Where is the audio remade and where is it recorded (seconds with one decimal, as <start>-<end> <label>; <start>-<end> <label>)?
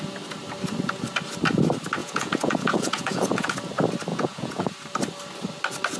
0.0-2.0 recorded; 2.0-3.5 remade; 3.5-4.1 recorded; 4.1-4.7 remade; 4.7-6.0 recorded